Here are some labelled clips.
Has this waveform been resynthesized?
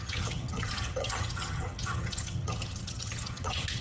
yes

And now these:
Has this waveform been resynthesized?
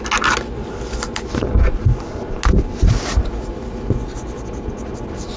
no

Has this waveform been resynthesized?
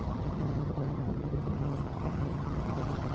yes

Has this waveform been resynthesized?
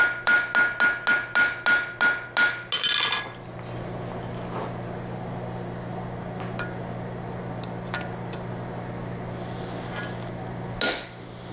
no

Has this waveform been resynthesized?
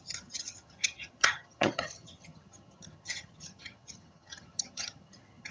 yes